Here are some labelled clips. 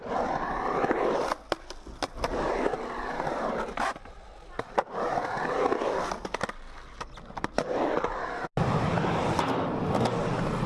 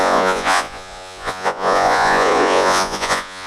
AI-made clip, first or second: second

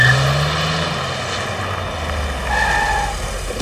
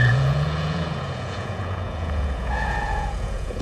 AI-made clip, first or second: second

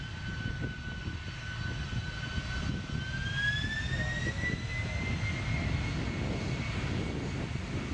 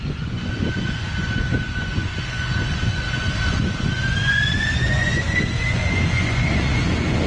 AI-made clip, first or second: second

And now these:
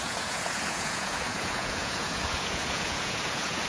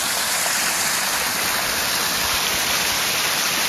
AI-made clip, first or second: first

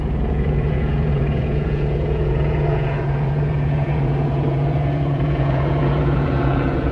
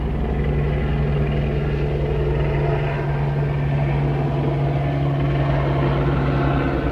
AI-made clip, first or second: first